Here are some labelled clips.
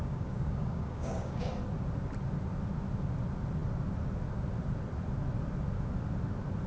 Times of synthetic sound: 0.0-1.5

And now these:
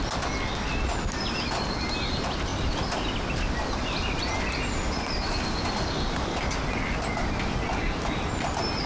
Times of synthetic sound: none